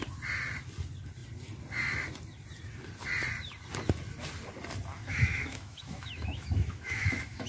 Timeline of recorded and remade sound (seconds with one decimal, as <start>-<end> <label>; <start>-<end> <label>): 0.0-5.0 recorded; 5.0-7.5 remade